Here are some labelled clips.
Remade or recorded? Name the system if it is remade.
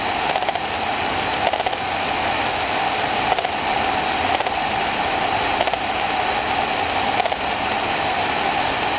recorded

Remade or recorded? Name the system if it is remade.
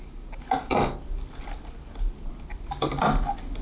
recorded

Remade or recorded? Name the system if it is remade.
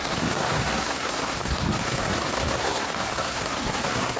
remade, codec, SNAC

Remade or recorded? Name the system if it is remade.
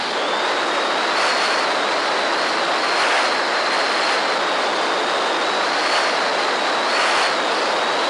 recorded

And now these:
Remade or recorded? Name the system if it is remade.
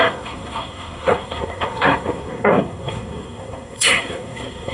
remade, codec, SNAC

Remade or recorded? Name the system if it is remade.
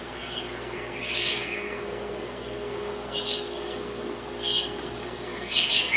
remade, codec, SNAC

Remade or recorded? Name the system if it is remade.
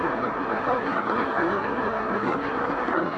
remade, codec, SNAC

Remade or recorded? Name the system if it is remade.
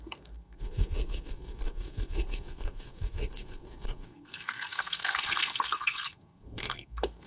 remade, codec, SNAC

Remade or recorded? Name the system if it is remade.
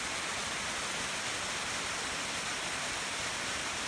recorded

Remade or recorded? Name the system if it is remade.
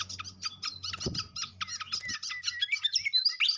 recorded